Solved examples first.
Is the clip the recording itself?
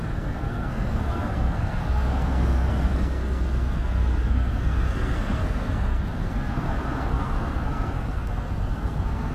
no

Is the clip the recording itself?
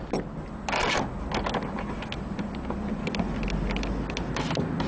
yes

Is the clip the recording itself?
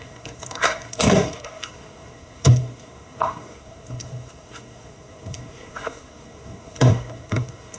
no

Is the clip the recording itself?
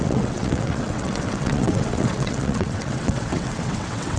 no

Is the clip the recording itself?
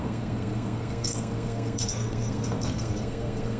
no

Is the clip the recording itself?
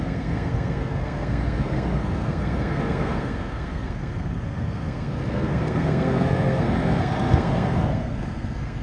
no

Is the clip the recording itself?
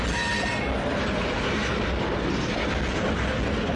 yes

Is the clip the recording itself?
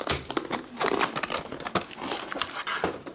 yes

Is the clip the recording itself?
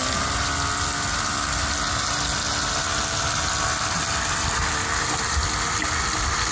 yes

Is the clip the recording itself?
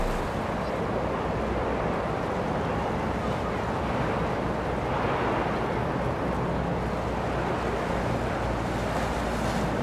yes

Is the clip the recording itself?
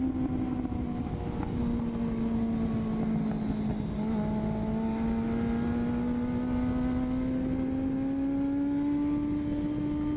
yes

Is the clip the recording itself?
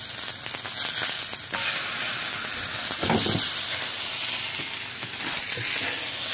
yes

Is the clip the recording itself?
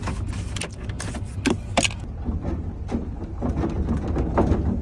yes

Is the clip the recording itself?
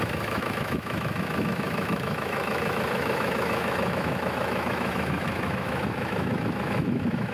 no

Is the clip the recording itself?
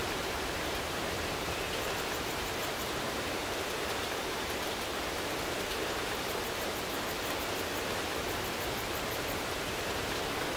no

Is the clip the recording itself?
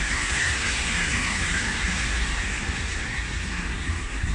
no